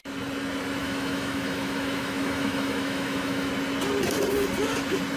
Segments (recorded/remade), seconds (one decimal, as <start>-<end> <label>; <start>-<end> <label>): 0.0-0.8 recorded; 0.8-3.5 remade; 3.5-5.2 recorded